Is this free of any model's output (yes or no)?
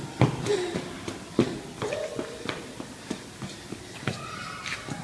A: yes